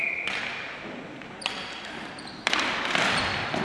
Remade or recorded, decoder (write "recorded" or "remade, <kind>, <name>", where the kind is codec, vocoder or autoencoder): remade, vocoder, BigVGAN v2